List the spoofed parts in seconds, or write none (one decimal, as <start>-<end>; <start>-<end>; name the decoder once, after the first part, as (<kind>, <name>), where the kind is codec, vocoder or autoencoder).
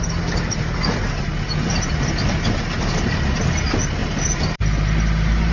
none